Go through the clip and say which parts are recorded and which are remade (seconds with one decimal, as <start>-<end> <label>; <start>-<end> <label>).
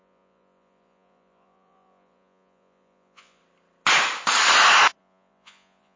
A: 0.0-3.4 remade; 3.4-5.0 recorded; 5.0-6.0 remade